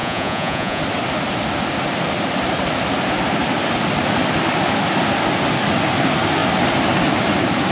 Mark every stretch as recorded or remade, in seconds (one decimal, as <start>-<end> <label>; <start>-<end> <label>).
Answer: 0.0-0.8 remade; 0.8-7.7 recorded